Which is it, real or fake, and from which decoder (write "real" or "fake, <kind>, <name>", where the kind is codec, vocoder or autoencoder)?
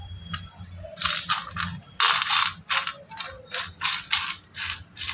real